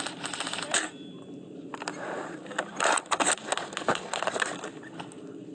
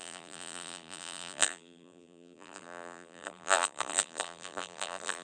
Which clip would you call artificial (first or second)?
second